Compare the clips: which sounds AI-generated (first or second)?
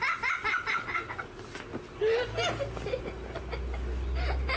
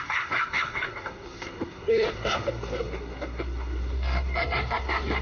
second